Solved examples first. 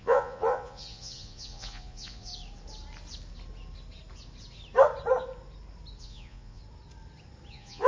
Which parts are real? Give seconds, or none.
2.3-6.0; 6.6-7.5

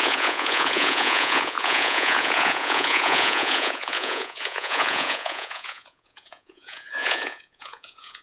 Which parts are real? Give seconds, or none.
none